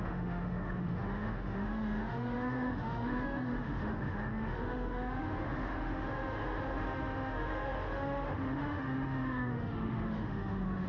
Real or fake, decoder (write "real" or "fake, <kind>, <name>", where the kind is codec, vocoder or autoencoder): fake, autoencoder, DAC-VAE